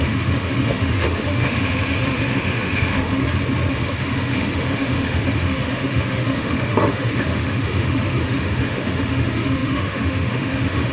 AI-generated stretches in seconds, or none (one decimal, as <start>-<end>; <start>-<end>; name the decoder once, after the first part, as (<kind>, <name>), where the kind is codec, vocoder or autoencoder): 0.0-3.2 (autoencoder, DAC-VAE); 3.7-10.9

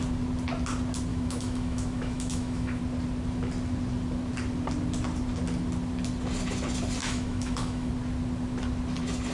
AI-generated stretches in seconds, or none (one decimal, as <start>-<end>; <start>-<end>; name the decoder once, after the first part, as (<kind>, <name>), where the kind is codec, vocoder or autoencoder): 1.1-2.8 (autoencoder, DAC-VAE); 7.0-7.9

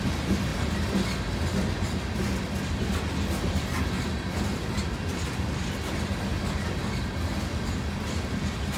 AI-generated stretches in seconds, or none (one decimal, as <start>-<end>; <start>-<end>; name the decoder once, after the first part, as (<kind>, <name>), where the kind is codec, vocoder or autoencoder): none

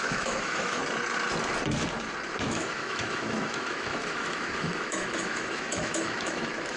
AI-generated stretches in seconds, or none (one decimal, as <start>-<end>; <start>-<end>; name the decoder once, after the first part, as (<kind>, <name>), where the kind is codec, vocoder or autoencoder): 0.0-0.8 (autoencoder, DAC-VAE); 2.4-6.8